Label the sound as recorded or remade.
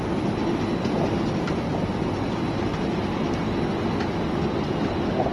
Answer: recorded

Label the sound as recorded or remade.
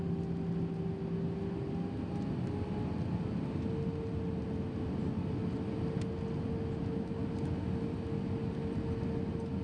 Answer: recorded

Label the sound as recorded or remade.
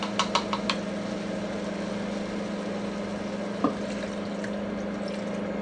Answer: recorded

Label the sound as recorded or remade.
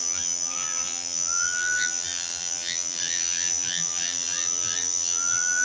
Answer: remade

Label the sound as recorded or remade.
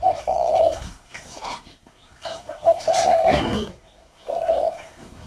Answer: remade